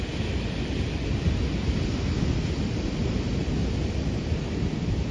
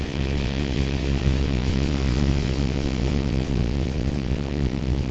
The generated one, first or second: second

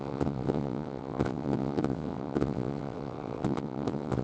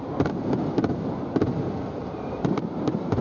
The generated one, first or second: first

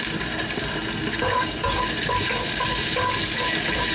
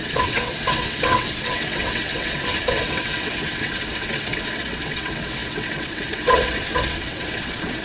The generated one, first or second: second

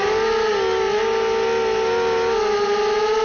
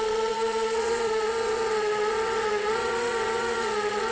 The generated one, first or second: second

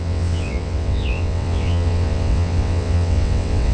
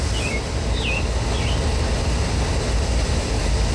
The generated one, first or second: first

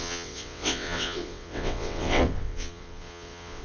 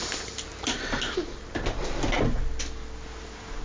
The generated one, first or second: first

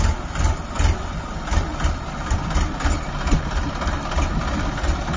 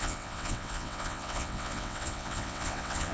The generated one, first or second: second